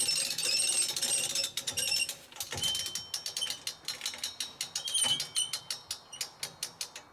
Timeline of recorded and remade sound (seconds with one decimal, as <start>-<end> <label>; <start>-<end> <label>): 0.0-7.1 recorded